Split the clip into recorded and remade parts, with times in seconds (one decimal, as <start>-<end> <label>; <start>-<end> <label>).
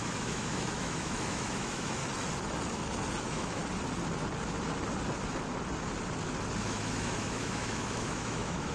0.0-2.0 remade; 2.0-3.2 recorded; 3.2-3.6 remade; 3.6-6.6 recorded; 6.6-8.7 remade